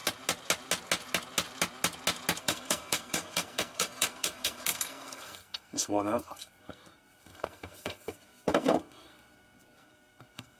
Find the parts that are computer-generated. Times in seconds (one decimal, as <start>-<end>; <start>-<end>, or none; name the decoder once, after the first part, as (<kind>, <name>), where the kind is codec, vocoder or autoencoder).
2.4-10.6 (codec, SNAC)